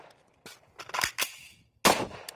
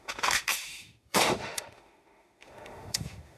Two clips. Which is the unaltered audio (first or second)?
first